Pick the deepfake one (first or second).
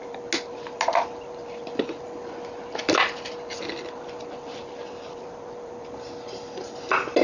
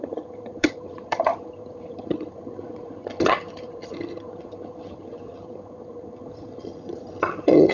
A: second